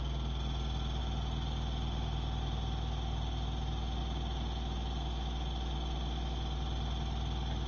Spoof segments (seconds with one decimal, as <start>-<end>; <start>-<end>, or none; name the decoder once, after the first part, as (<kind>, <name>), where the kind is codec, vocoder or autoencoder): none

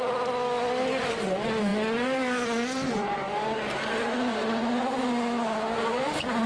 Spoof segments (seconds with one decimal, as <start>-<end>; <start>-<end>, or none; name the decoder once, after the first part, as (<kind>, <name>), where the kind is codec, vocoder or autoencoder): none

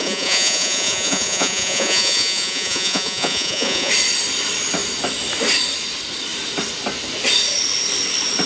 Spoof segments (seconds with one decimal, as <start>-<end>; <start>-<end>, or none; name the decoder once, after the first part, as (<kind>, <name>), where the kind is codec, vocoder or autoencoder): 0.0-3.9 (vocoder, Vocos)

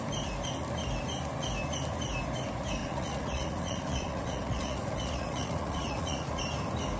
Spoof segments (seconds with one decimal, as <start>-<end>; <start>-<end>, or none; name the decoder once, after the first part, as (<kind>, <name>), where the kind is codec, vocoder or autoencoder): 2.8-6.4 (vocoder, Vocos)

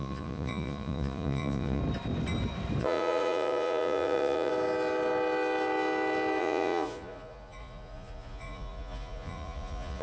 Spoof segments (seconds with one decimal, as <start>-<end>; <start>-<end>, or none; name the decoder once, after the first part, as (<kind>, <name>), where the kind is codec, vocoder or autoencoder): 0.0-1.8 (vocoder, Vocos); 2.8-4.5; 6.4-10.0

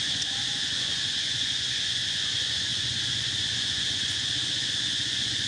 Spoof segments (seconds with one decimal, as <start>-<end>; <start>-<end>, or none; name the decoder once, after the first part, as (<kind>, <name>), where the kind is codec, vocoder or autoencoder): 0.0-5.5 (vocoder, Vocos)

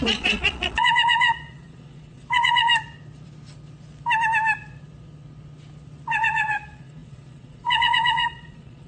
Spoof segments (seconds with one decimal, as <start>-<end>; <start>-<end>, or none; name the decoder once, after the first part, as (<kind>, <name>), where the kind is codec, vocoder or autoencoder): 0.0-2.7 (vocoder, Vocos); 6.1-8.9